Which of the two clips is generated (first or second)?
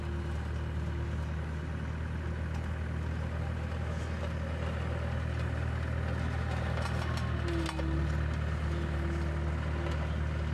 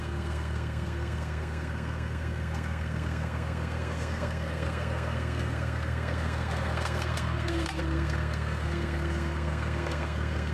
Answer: second